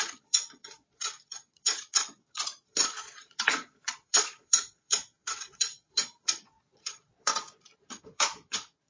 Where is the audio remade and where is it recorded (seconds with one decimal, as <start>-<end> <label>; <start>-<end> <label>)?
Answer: 0.0-8.9 remade